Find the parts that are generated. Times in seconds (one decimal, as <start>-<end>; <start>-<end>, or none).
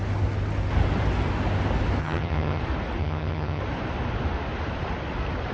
2.0-2.6; 3.0-3.6